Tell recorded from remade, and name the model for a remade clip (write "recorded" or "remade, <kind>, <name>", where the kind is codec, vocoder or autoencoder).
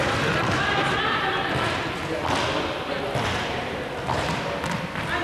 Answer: remade, vocoder, BigVGAN v2